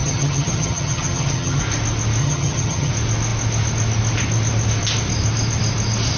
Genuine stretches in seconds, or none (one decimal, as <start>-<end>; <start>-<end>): 1.6-2.2; 2.9-6.2